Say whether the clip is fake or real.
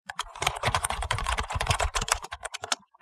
fake